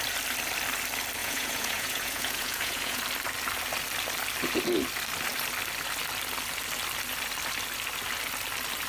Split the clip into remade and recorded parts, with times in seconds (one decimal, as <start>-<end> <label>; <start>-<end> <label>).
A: 0.0-1.2 recorded; 1.2-3.0 remade; 3.0-8.9 recorded

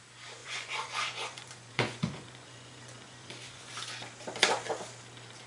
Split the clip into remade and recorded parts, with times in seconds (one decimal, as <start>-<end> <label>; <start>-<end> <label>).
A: 0.0-0.4 recorded; 0.4-3.7 remade; 3.7-5.5 recorded

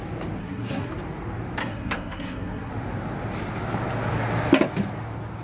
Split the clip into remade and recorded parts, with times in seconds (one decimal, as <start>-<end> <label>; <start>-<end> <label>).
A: 0.0-0.4 recorded; 0.4-0.9 remade; 0.9-1.6 recorded; 1.6-2.7 remade; 2.7-5.4 recorded

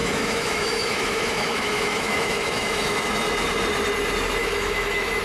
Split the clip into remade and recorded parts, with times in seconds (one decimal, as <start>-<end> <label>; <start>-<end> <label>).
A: 0.0-3.1 remade; 3.1-4.4 recorded; 4.4-5.2 remade